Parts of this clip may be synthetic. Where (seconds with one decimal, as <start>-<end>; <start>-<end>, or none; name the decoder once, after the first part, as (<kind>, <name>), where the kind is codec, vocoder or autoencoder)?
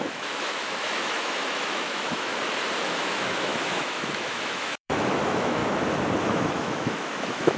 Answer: 0.0-2.3 (autoencoder, DAC-VAE); 2.8-5.6; 6.2-7.6